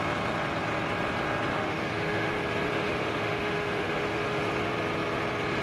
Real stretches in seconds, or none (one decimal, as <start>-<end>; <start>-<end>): 0.0-1.5; 2.3-2.7; 4.4-5.6